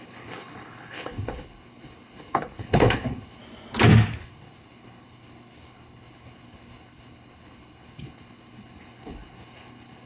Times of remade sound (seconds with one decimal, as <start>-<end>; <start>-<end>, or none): 0.0-3.4; 4.2-10.1